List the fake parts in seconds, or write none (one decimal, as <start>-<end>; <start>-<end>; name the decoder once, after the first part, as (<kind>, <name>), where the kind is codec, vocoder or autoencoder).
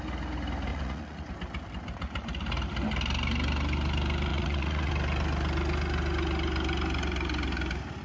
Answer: 0.7-1.3 (vocoder, Vocos); 4.3-4.9